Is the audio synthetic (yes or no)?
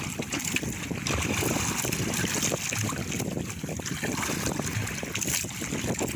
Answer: no